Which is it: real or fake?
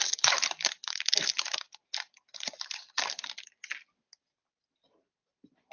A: real